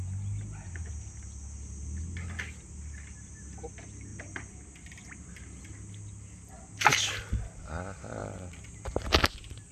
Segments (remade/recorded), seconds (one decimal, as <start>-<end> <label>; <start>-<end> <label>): 0.0-4.1 recorded; 4.1-5.6 remade; 5.6-8.2 recorded; 8.2-9.1 remade; 9.1-9.7 recorded